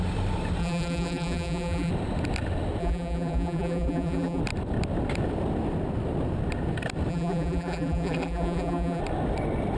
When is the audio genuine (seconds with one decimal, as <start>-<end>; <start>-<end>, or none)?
0.0-0.6; 1.9-2.8; 4.4-7.1; 9.0-9.8